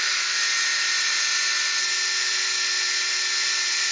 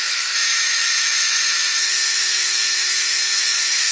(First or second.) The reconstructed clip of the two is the second